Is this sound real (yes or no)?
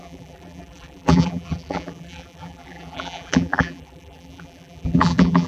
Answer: no